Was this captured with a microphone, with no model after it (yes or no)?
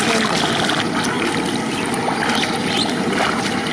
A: yes